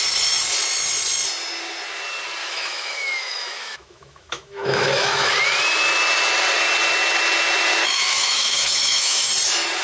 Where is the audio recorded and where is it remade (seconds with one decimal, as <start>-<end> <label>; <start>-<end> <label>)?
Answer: 0.0-2.4 recorded; 2.4-5.3 remade; 5.3-7.8 recorded; 7.8-9.3 remade; 9.3-9.8 recorded